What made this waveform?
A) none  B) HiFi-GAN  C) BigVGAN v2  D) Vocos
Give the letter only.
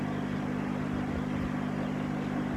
A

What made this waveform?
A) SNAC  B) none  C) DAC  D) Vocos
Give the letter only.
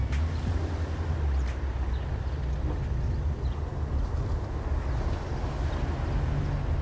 B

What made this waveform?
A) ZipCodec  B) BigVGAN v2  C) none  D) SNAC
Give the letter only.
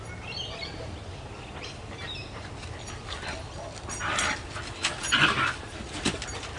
C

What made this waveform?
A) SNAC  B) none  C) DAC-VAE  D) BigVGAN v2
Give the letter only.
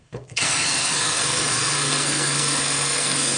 A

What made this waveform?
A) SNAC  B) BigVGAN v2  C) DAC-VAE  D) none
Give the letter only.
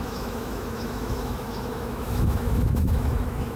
C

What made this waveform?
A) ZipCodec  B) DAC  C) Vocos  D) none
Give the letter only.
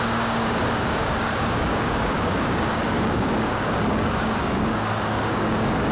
B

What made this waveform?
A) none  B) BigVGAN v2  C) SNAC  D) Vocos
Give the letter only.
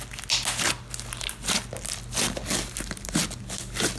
A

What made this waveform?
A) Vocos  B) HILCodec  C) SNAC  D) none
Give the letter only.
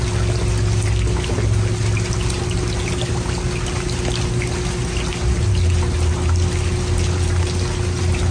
D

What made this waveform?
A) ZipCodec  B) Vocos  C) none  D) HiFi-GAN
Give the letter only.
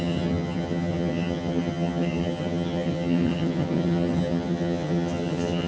D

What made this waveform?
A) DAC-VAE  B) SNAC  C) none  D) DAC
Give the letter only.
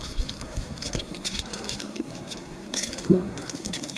B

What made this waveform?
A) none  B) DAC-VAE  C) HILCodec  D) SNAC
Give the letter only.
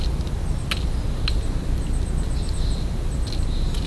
A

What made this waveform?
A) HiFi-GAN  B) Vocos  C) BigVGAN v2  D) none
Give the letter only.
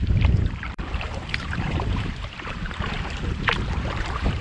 C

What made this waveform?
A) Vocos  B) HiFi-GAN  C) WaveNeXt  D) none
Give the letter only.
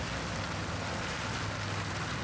D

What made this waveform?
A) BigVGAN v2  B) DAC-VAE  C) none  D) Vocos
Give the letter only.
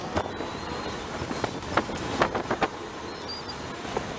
C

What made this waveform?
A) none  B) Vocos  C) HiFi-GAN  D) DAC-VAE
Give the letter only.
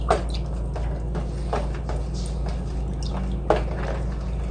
A